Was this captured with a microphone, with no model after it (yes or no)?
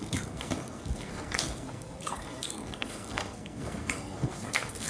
no